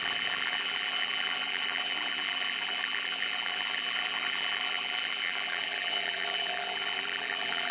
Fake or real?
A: fake